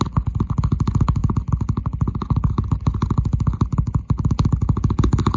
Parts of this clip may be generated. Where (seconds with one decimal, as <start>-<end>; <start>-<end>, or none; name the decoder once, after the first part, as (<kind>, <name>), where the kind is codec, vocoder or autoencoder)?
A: none